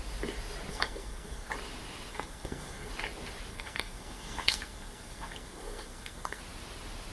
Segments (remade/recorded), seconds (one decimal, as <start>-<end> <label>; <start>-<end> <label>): 0.0-0.7 recorded; 0.7-1.5 remade; 1.5-2.1 recorded; 2.1-2.9 remade; 2.9-3.5 recorded; 3.5-6.4 remade; 6.4-7.1 recorded